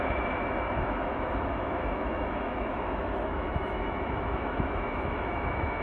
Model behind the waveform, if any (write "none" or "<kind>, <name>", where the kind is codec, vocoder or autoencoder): autoencoder, DAC-VAE